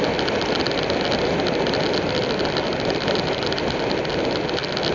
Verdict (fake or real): real